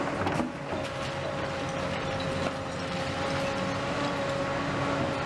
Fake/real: real